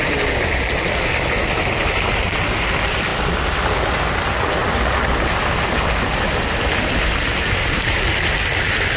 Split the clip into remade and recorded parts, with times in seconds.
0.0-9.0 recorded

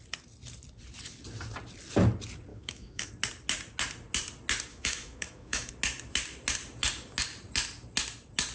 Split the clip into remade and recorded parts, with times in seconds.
0.0-2.5 recorded; 2.5-3.1 remade; 3.1-4.7 recorded; 4.7-5.7 remade; 5.7-8.5 recorded

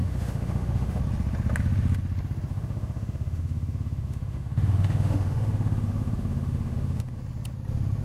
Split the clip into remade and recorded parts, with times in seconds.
0.0-1.0 remade; 1.0-2.5 recorded; 2.5-7.2 remade; 7.2-8.0 recorded

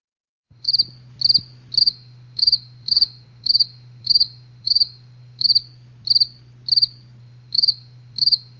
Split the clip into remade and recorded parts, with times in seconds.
0.0-0.7 remade; 0.7-1.8 recorded; 1.8-5.5 remade; 5.5-7.2 recorded; 7.2-8.6 remade

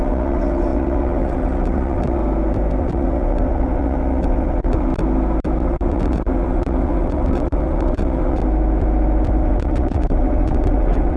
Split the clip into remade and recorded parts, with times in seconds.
0.0-2.2 remade; 2.2-2.8 recorded; 2.8-4.9 remade; 4.9-5.6 recorded; 5.6-8.4 remade; 8.4-9.4 recorded; 9.4-11.2 remade